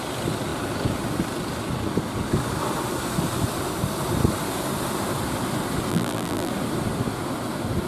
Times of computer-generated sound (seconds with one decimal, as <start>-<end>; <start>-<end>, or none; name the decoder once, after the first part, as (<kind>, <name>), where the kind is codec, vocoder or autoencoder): 5.9-6.5 (vocoder, BigVGAN v2)